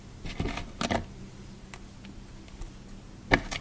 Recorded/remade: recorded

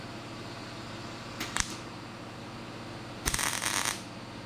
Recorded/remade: recorded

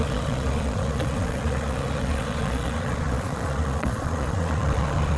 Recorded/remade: remade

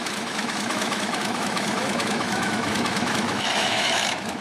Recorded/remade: remade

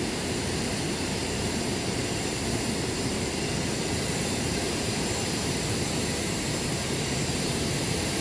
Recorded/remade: remade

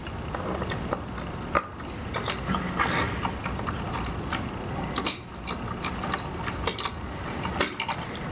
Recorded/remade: recorded